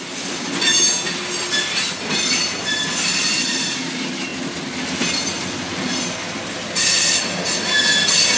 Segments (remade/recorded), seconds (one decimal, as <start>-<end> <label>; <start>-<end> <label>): 0.0-8.4 recorded